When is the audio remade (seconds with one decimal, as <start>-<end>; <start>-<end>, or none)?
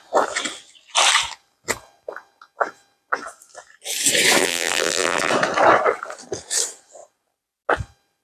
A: 4.4-5.3